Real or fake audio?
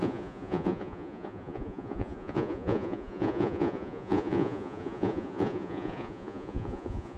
fake